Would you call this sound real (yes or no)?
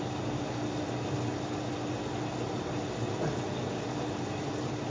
yes